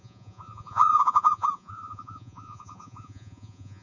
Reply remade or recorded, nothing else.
remade